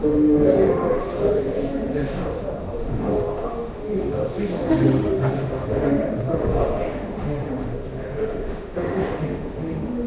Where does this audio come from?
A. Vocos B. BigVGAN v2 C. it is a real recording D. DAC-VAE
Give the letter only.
D